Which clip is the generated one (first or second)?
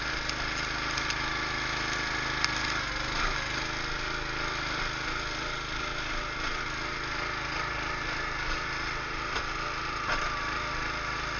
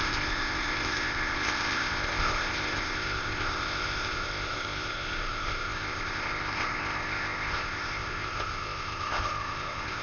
second